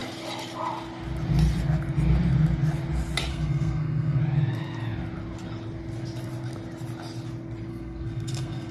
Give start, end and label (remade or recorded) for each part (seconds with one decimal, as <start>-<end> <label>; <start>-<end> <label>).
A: 0.0-3.3 recorded; 3.3-4.2 remade; 4.2-7.7 recorded; 7.7-8.7 remade